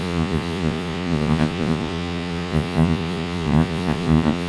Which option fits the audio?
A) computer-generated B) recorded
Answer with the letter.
A